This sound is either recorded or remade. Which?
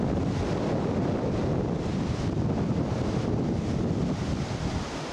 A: recorded